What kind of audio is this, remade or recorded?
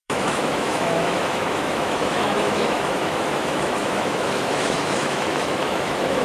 remade